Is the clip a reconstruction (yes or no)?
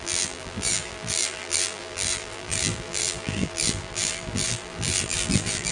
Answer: yes